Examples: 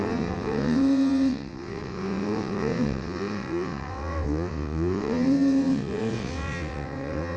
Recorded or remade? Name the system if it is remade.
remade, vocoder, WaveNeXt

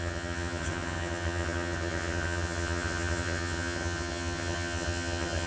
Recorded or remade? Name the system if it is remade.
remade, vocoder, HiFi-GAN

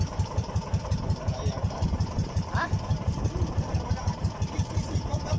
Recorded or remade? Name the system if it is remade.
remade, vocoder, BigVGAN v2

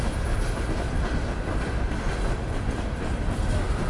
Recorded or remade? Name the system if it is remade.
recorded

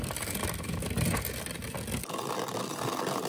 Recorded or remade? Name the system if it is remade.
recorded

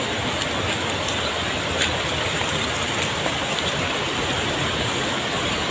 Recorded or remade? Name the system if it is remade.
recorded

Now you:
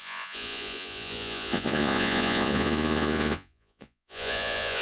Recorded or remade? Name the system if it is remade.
remade, vocoder, Vocos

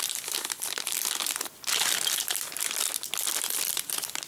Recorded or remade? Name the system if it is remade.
recorded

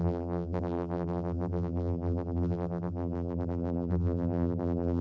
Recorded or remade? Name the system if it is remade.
remade, vocoder, BigVGAN v2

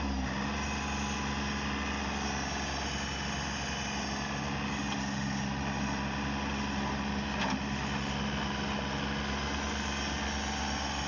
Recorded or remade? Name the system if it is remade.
recorded